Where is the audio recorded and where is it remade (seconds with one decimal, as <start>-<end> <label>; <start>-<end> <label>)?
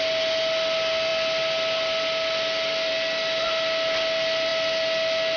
0.0-5.4 recorded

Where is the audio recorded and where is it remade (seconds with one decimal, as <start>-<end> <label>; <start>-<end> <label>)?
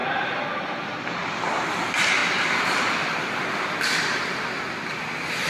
0.0-5.5 recorded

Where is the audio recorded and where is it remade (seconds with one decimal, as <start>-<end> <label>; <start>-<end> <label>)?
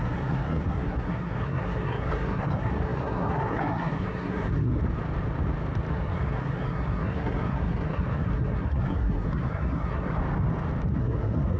0.0-4.8 remade; 4.8-5.9 recorded; 5.9-10.2 remade; 10.2-11.0 recorded; 11.0-11.6 remade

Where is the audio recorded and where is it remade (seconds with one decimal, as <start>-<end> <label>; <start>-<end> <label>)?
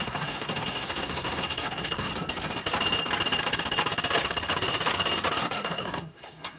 0.0-2.1 remade; 2.1-5.4 recorded; 5.4-6.6 remade